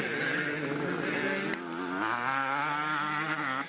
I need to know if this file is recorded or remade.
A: recorded